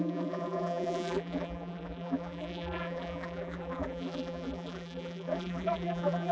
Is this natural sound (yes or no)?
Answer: no